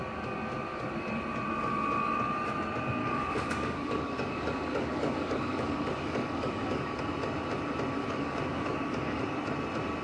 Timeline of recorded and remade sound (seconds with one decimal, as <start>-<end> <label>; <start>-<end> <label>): 0.0-3.0 recorded; 3.0-7.0 remade; 7.0-8.0 recorded; 8.0-9.2 remade; 9.2-10.0 recorded